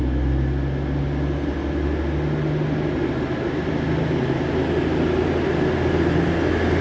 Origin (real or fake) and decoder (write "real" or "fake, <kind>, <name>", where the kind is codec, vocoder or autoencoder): real